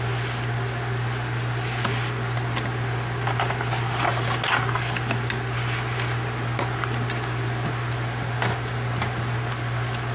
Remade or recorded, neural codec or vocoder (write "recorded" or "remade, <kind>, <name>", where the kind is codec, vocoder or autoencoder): recorded